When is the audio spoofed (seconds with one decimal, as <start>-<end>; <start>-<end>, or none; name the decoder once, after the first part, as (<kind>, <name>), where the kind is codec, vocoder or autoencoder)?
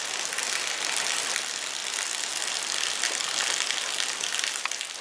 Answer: none